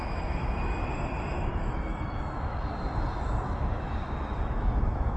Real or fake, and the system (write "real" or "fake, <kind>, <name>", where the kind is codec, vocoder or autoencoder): fake, autoencoder, DAC-VAE